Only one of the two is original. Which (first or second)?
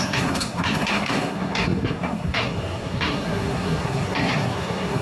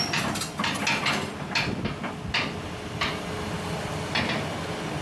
second